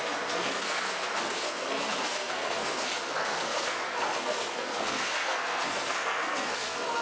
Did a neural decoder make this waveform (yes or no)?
yes